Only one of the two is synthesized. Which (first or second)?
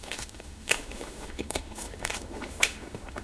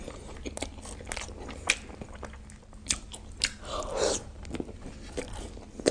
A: first